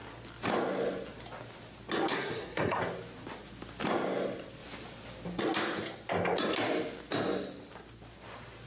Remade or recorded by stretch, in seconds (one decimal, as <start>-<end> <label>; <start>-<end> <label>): 0.0-2.1 recorded; 2.1-2.8 remade; 2.8-8.7 recorded